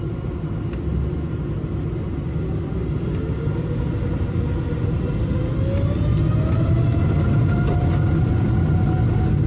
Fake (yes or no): no